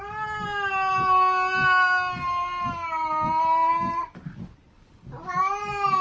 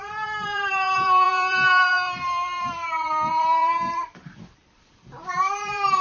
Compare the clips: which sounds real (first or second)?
first